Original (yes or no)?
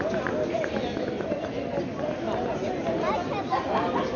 yes